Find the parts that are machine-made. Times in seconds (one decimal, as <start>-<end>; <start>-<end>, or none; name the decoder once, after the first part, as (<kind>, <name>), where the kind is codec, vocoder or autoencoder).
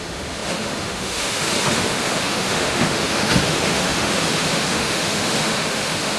0.0-6.2 (autoencoder, DAC-VAE)